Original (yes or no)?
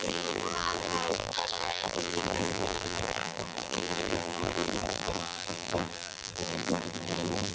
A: no